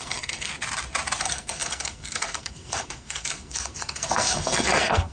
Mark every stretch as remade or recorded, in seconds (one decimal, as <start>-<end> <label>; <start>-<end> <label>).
0.0-0.5 remade; 0.5-1.2 recorded; 1.2-5.1 remade